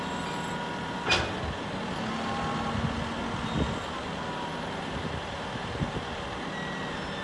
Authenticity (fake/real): real